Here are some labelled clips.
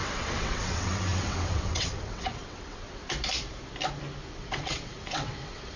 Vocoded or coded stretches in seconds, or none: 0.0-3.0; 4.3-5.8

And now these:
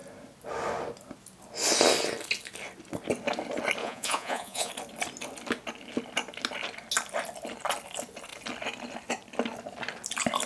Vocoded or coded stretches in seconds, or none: 3.8-4.7

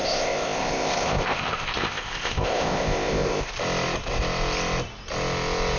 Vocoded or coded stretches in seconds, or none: 0.0-3.5

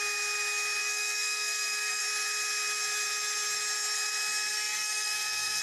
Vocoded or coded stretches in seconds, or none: 0.8-2.0; 4.5-5.6

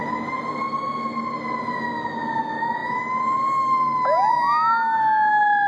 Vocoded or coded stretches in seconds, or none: 0.0-0.8

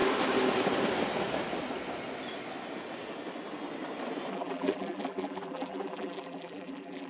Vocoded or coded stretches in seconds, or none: 4.3-7.1

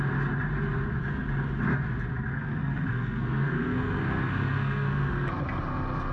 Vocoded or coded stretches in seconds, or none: 2.3-5.3

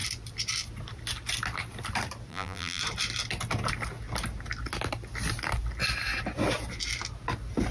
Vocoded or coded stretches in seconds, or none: 2.3-2.8